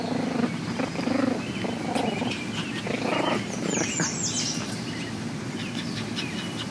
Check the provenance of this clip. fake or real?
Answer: real